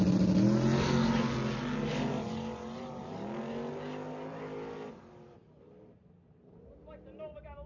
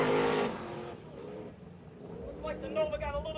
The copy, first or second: second